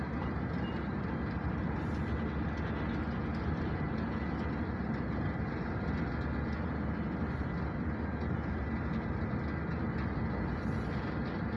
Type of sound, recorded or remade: recorded